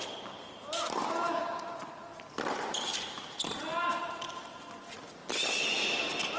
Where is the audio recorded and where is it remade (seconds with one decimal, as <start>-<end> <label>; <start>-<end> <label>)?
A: 0.0-6.4 recorded